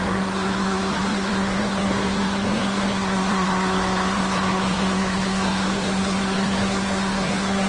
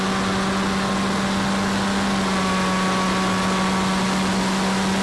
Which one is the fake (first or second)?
first